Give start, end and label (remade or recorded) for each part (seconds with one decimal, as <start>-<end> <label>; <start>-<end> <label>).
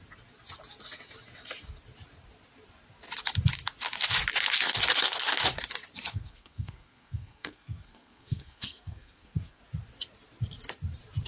0.0-6.1 recorded; 6.1-9.6 remade; 9.6-11.3 recorded